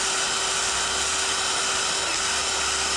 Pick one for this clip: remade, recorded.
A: recorded